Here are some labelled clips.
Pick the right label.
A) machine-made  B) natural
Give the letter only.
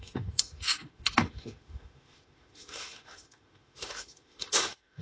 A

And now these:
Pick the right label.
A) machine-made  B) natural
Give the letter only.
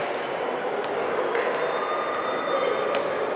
B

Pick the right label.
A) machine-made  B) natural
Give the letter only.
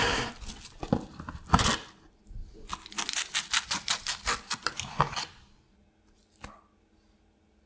B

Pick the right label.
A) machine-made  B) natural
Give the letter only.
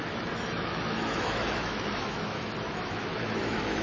A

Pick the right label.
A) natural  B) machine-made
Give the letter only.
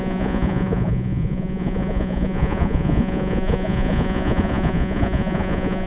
B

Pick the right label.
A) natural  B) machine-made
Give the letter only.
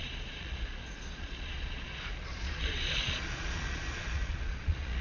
B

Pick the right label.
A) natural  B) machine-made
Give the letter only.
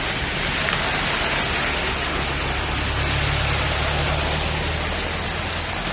A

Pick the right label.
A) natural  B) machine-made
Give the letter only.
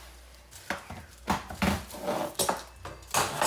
A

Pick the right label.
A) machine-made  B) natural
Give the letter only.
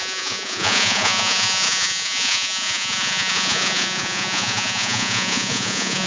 A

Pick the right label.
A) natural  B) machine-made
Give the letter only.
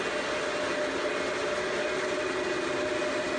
A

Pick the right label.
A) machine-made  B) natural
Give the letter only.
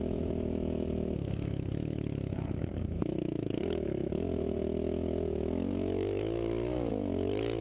A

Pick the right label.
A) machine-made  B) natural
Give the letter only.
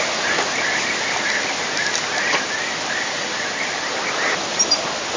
B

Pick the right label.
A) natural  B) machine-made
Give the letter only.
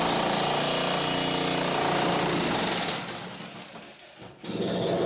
A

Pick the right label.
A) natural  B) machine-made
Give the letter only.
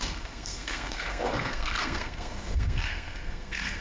B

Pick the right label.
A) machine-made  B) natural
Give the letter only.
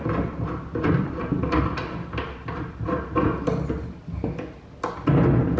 B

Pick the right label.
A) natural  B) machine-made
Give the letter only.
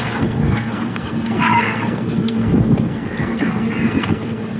B